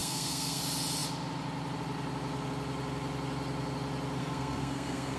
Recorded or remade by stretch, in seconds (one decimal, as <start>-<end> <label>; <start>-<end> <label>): 0.0-0.6 remade; 0.6-4.2 recorded; 4.2-5.2 remade